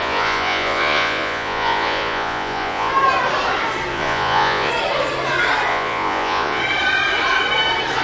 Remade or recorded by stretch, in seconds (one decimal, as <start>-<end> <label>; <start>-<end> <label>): 0.0-2.9 remade; 2.9-3.9 recorded; 3.9-4.7 remade; 4.7-5.7 recorded; 5.7-6.6 remade; 6.6-8.0 recorded